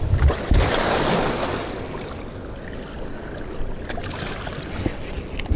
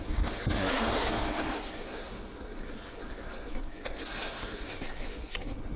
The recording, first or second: first